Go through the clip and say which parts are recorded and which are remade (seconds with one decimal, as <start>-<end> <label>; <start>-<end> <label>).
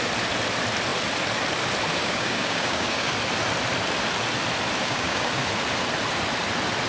0.0-2.0 recorded; 2.0-3.1 remade; 3.1-4.8 recorded; 4.8-5.3 remade; 5.3-6.9 recorded